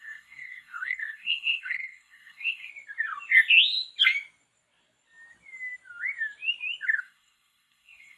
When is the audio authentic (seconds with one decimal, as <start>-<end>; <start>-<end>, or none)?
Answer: 2.7-7.0